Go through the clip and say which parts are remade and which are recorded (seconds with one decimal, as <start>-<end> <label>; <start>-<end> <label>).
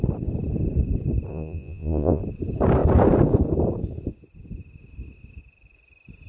0.0-1.3 recorded; 1.3-2.2 remade; 2.2-6.3 recorded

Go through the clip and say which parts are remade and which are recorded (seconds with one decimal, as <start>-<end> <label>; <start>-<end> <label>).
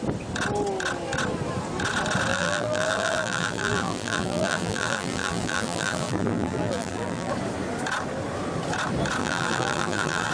0.0-2.3 recorded; 2.3-7.3 remade; 7.3-9.2 recorded; 9.2-10.3 remade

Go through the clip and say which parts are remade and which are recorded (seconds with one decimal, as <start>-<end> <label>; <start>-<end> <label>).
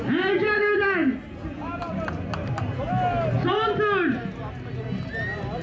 0.0-5.6 recorded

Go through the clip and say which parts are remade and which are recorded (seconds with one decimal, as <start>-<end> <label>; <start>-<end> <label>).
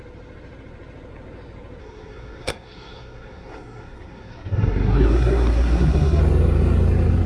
0.0-1.8 recorded; 1.8-6.2 remade; 6.2-7.3 recorded